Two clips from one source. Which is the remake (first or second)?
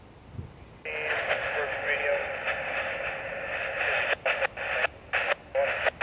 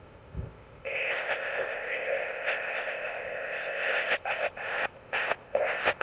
second